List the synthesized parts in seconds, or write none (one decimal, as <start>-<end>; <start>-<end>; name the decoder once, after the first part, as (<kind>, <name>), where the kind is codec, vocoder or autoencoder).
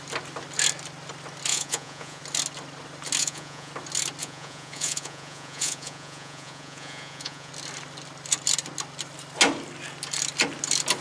1.5-2.2 (vocoder, Vocos); 3.2-3.7; 4.2-7.5